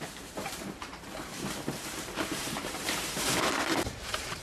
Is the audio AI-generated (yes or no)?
yes